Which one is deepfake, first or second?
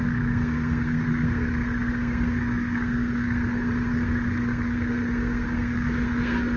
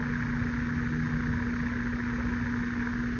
first